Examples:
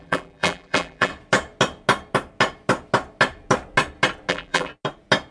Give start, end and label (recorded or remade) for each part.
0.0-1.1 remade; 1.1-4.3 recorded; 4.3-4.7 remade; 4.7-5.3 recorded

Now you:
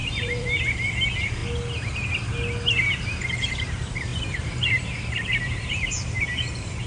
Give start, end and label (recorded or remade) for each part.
0.0-1.4 remade; 1.4-2.8 recorded; 2.8-6.9 remade

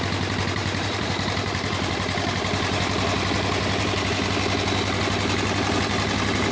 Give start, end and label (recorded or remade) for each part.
0.0-0.6 recorded; 0.6-4.1 remade; 4.1-6.5 recorded